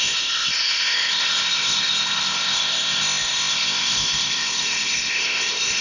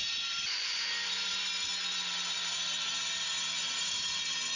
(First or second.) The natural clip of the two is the second